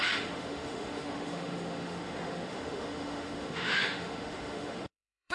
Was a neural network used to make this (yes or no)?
yes